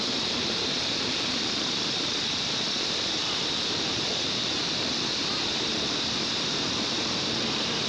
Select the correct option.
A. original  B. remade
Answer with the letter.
B